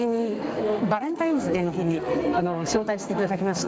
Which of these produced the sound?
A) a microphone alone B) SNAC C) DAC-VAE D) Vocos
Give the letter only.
B